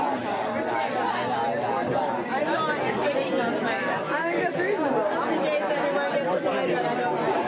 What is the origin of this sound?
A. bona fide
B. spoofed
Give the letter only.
A